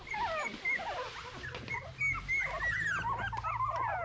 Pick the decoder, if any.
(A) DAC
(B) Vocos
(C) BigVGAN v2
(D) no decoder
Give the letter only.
D